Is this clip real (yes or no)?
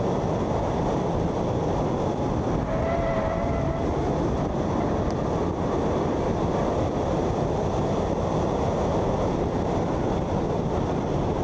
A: yes